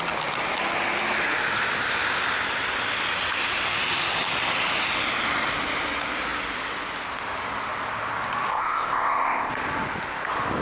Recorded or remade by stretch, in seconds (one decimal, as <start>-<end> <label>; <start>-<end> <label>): 0.0-8.5 recorded; 8.5-9.5 remade; 9.5-10.6 recorded